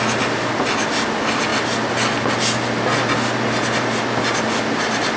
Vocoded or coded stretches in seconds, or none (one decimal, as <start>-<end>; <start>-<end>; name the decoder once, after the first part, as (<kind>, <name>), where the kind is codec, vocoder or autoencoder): none